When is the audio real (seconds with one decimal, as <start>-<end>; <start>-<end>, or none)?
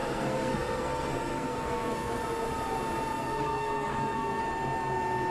2.2-3.2; 4.4-5.3